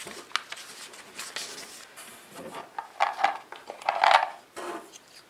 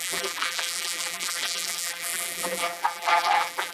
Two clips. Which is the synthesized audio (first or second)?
second